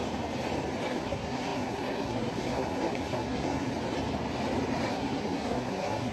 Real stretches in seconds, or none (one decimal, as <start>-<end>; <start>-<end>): 0.0-0.9; 3.7-4.9